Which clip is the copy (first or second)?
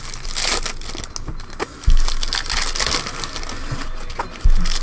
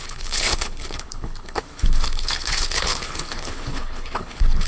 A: second